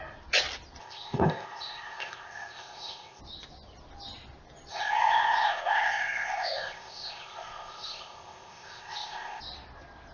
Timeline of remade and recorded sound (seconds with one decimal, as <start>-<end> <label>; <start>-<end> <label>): 0.0-0.8 recorded; 0.8-3.2 remade; 3.2-4.7 recorded; 4.7-9.4 remade; 9.4-10.1 recorded